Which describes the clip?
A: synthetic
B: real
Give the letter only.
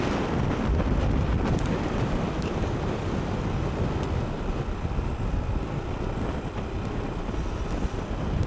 B